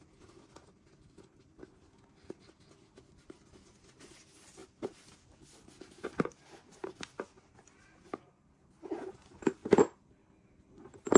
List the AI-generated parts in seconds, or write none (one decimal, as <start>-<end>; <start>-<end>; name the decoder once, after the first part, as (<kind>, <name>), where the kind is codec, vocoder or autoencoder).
none